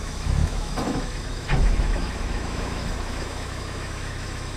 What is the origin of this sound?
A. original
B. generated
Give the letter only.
B